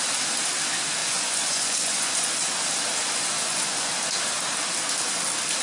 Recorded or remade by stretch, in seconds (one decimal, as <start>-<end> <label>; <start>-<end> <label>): 0.0-1.0 recorded; 1.0-2.3 remade; 2.3-3.0 recorded; 3.0-3.9 remade; 3.9-5.6 recorded